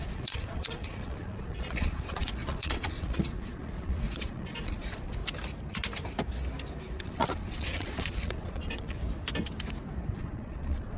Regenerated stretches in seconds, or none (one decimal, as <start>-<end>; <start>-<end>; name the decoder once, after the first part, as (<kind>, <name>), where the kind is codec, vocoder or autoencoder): 0.0-5.2 (vocoder, Vocos); 7.0-9.0; 10.2-11.0